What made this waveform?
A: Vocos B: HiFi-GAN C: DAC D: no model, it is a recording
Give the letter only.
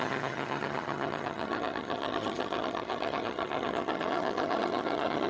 B